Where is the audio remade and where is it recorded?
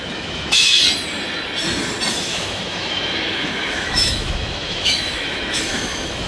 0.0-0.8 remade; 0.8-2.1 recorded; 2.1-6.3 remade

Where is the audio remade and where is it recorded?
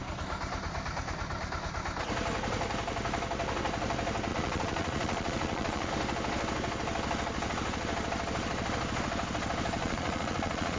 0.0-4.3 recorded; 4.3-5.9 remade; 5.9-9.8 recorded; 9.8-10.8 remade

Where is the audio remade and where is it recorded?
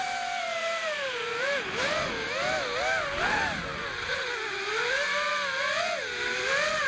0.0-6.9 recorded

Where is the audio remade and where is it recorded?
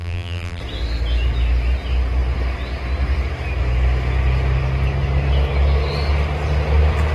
0.0-0.6 remade; 0.6-7.1 recorded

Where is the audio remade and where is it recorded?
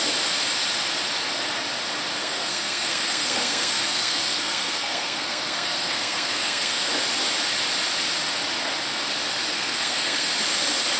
0.0-2.2 recorded; 2.2-6.9 remade; 6.9-9.5 recorded; 9.5-10.3 remade; 10.3-11.0 recorded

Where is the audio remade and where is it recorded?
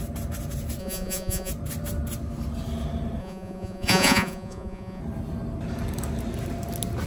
0.0-0.8 recorded; 0.8-1.5 remade; 1.5-3.2 recorded; 3.2-5.0 remade; 5.0-7.1 recorded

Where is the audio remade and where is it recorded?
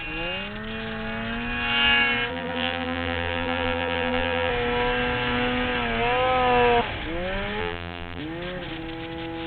0.0-2.3 recorded; 2.3-4.5 remade; 4.5-7.6 recorded; 7.6-8.2 remade; 8.2-9.5 recorded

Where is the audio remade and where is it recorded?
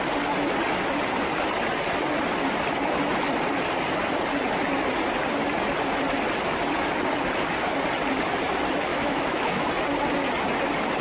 0.0-8.9 recorded; 8.9-9.7 remade; 9.7-11.0 recorded